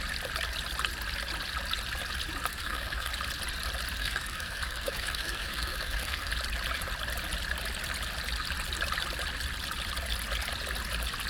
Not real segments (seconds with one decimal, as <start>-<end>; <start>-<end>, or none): 2.5-3.1; 4.0-6.3